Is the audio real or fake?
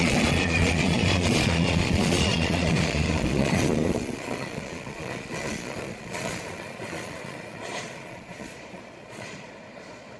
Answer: fake